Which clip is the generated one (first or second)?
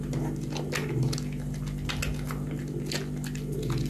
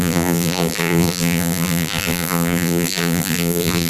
second